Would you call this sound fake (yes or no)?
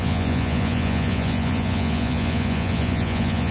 yes